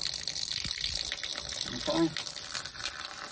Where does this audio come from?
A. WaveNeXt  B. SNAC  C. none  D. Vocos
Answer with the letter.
C